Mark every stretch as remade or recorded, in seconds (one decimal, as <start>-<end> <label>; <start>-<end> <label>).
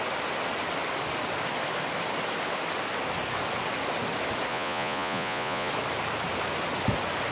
0.0-4.5 recorded; 4.5-5.7 remade; 5.7-7.3 recorded